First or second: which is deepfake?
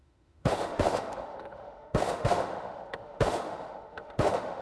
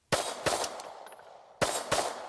first